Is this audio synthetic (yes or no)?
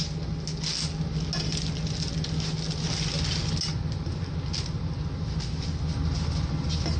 no